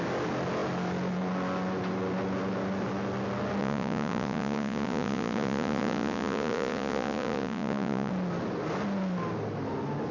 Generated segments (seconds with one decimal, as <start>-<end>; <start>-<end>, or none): 3.6-8.1